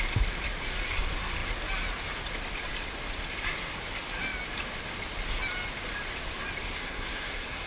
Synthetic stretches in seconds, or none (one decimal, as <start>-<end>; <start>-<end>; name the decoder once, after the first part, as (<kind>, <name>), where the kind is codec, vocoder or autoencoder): 6.7-7.7 (codec, SNAC)